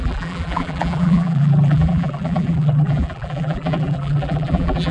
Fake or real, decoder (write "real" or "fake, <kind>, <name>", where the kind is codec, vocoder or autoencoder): fake, vocoder, BigVGAN v2